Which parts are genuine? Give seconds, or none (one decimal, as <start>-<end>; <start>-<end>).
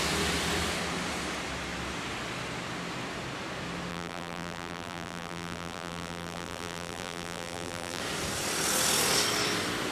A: 0.0-3.9; 8.0-9.9